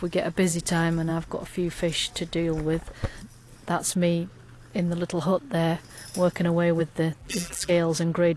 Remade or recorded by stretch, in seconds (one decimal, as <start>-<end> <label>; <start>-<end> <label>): 0.0-7.2 recorded; 7.2-7.7 remade; 7.7-8.4 recorded